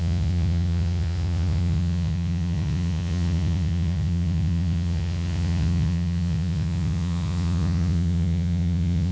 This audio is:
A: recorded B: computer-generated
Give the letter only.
B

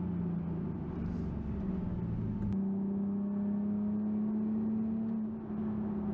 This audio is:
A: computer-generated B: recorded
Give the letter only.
B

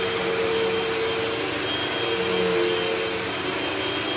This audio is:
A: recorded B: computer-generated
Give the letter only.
A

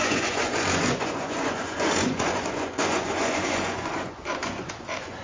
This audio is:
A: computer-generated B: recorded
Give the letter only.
A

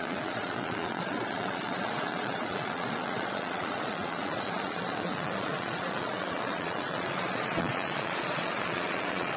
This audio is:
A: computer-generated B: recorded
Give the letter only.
A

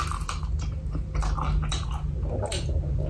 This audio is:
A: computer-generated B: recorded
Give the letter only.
B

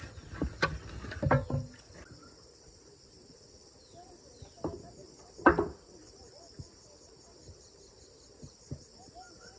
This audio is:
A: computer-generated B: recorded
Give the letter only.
B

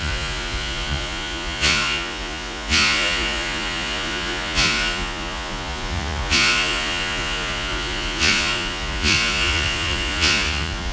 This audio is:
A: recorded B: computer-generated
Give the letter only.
B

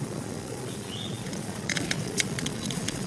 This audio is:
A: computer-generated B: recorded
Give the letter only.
A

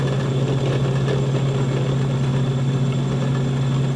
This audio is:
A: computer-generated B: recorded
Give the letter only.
B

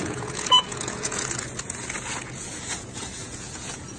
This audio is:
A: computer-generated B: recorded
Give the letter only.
A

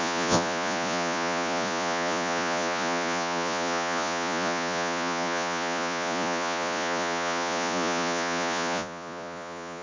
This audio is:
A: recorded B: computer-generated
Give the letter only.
B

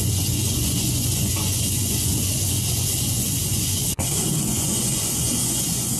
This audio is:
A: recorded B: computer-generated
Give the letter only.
B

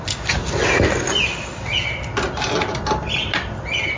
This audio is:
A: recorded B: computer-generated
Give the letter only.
A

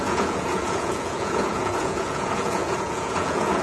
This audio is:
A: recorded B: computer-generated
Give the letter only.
B